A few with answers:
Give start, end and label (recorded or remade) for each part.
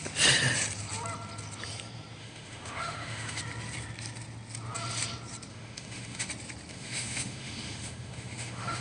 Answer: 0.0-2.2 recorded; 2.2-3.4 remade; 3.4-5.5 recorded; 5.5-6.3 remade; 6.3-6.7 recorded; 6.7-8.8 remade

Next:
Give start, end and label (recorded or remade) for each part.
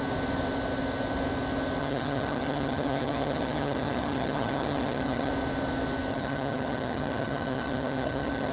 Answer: 0.0-1.8 recorded; 1.8-5.3 remade; 5.3-6.1 recorded; 6.1-8.5 remade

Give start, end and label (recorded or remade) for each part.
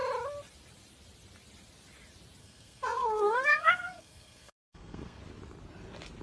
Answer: 0.0-2.4 recorded; 2.4-5.2 remade; 5.2-6.2 recorded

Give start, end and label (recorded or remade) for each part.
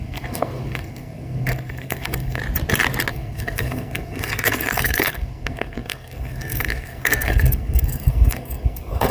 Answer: 0.0-2.4 remade; 2.4-3.1 recorded; 3.1-9.1 remade